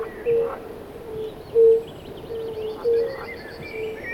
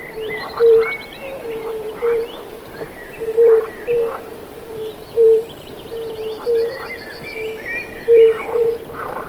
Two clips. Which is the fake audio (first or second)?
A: second